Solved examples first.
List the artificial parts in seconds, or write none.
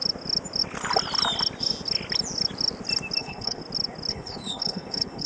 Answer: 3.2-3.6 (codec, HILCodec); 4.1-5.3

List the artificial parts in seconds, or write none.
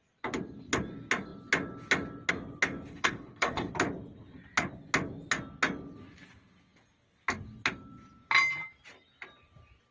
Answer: 2.9-3.7 (codec, HILCodec)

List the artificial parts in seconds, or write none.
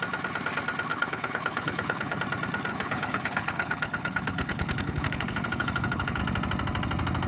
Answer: 0.9-2.2 (codec, HILCodec); 2.7-6.2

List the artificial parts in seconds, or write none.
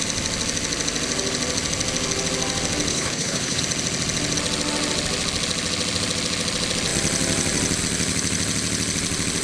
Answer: 2.9-3.6 (codec, HILCodec)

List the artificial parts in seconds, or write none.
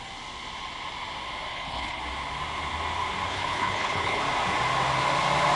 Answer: 1.5-2.0 (codec, HILCodec); 3.3-4.2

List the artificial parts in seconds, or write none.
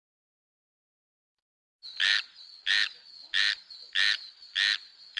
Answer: none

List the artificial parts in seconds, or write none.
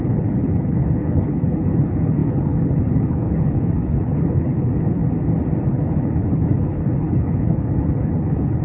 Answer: 0.0-5.0 (codec, HILCodec); 5.7-8.6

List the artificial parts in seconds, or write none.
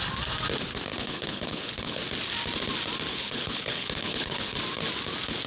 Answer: 0.9-2.0 (codec, HILCodec); 3.1-4.6